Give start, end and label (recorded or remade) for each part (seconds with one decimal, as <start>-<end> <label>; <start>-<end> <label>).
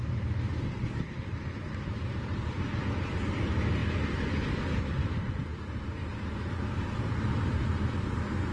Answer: 0.0-8.5 remade